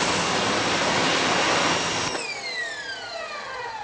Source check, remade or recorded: recorded